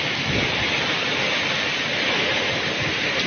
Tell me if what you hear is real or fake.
real